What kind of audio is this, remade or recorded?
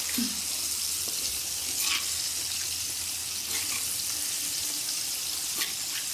recorded